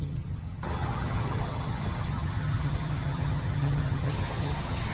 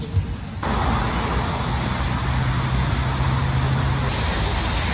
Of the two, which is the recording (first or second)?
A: second